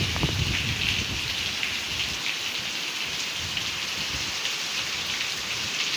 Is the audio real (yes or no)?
yes